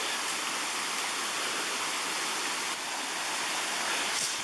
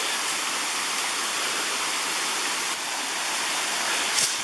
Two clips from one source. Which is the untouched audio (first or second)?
first